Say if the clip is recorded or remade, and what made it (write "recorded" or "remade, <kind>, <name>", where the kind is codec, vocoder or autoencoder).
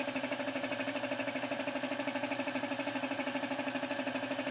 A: remade, vocoder, BigVGAN v2